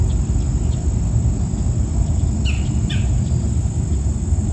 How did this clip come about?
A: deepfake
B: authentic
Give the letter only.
B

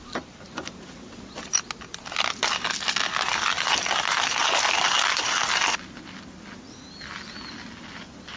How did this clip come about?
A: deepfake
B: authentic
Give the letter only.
B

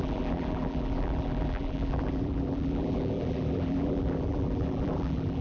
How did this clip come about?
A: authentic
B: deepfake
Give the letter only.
B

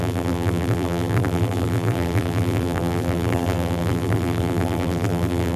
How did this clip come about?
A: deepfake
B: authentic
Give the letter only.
A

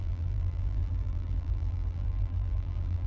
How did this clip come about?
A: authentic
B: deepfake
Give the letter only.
B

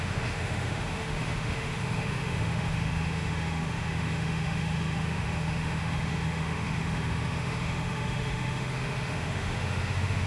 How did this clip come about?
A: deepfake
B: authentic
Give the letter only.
A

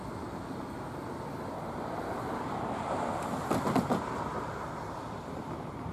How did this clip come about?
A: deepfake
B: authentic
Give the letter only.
B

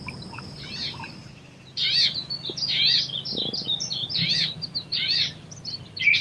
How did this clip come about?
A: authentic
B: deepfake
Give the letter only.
A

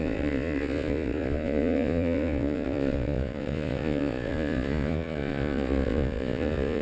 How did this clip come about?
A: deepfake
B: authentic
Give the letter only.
A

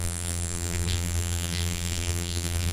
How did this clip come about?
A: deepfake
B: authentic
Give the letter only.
A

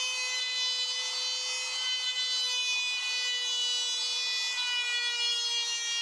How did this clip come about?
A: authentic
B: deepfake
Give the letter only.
A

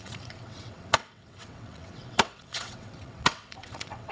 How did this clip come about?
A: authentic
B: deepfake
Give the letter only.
B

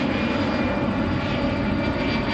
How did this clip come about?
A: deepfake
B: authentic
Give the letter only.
B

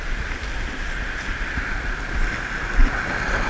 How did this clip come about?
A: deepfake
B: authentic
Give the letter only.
B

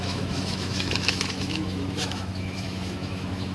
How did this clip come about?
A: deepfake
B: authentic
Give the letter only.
A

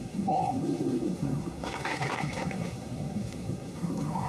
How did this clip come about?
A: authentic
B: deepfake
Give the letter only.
B